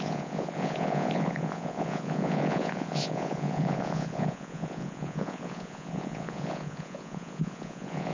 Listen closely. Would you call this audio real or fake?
fake